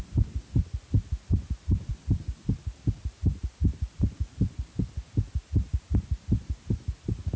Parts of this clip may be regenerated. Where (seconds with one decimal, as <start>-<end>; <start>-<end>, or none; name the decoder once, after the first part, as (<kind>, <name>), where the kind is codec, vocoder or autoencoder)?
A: none